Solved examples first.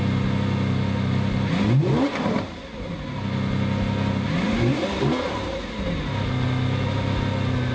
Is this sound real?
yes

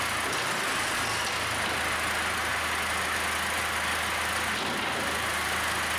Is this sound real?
yes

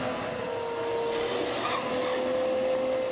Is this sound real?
yes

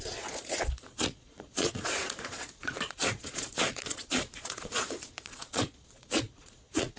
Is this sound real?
no